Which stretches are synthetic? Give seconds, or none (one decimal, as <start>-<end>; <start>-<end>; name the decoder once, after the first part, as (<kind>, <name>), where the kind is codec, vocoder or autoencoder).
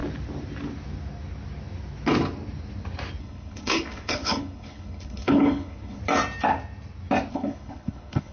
3.2-6.0 (codec, HILCodec); 7.3-8.3